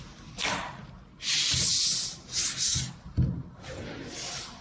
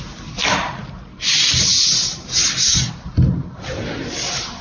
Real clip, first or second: first